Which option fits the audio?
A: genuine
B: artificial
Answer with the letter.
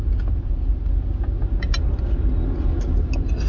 A